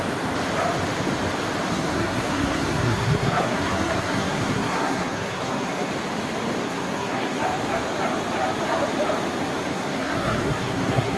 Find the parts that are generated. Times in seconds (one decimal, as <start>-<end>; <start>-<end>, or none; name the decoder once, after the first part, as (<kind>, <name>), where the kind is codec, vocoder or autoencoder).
1.7-5.9 (codec, SNAC); 6.6-7.4; 9.7-11.2